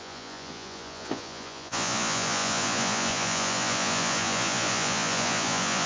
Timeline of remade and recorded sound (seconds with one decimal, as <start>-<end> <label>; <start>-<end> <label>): 0.0-5.9 remade